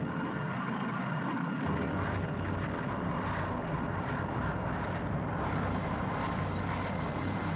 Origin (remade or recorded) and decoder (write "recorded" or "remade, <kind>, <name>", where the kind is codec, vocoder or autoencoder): remade, vocoder, BigVGAN v2